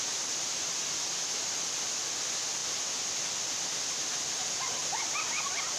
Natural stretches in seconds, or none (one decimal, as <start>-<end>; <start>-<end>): 0.0-5.8